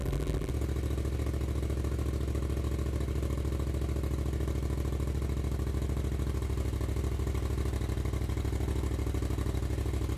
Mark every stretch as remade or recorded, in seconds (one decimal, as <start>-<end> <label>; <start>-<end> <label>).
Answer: 0.0-0.5 remade; 0.5-10.2 recorded